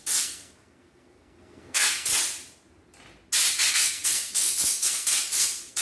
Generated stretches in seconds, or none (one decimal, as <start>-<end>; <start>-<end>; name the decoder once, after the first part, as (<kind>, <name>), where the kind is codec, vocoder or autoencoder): 0.0-2.1 (codec, SNAC); 3.7-5.8